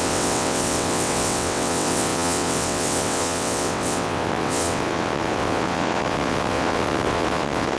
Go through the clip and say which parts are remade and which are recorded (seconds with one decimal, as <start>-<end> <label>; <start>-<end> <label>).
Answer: 0.0-7.8 remade